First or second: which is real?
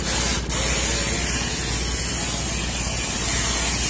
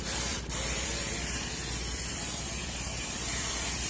first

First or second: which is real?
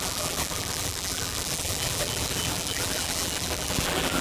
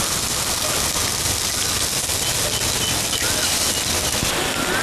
second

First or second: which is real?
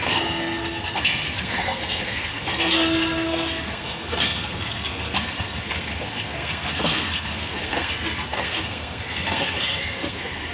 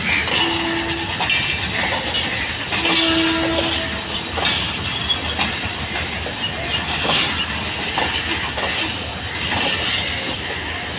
second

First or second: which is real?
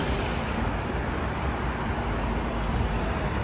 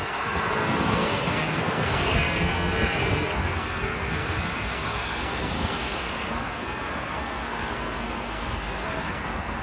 first